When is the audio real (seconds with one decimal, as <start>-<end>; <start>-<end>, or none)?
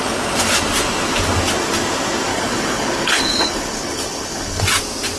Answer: 0.0-2.3; 4.6-5.2